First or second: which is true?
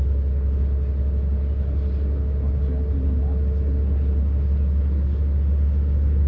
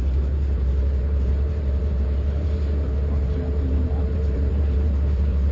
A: first